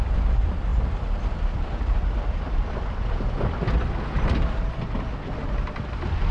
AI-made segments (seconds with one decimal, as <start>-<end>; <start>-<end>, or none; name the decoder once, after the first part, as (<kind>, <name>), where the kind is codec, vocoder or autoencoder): 0.0-6.3 (vocoder, BigVGAN v2)